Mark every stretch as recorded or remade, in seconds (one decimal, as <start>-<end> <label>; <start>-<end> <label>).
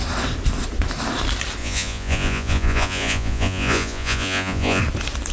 0.0-1.6 recorded; 1.6-4.8 remade; 4.8-5.3 recorded